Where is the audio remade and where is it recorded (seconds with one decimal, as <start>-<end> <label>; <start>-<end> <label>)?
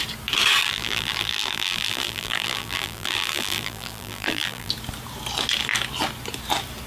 0.0-0.6 recorded; 0.6-4.7 remade; 4.7-6.9 recorded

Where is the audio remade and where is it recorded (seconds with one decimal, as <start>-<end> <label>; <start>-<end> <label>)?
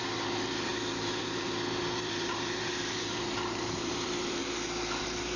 0.0-4.4 remade; 4.4-5.0 recorded; 5.0-5.4 remade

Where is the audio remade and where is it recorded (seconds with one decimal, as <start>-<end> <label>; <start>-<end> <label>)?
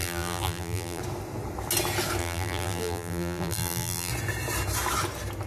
0.0-1.0 remade; 1.0-2.2 recorded; 2.2-4.1 remade; 4.1-5.5 recorded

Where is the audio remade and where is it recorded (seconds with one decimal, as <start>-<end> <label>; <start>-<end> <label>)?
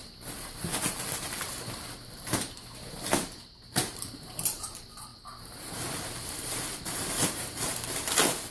0.0-8.5 remade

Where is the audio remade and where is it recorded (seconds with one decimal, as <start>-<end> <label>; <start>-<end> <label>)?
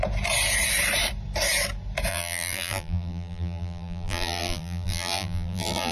0.0-2.1 recorded; 2.1-5.9 remade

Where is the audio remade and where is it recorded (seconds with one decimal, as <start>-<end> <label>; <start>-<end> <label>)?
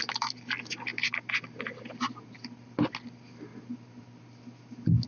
0.0-5.1 recorded